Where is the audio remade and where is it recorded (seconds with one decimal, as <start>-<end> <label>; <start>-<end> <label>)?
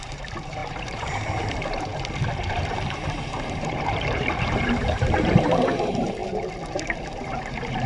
0.0-1.9 remade; 1.9-2.5 recorded; 2.5-6.2 remade; 6.2-6.7 recorded; 6.7-7.9 remade